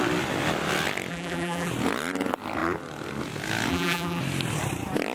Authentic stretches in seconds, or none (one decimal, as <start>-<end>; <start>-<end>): 0.0-1.1; 1.7-3.7; 4.2-5.1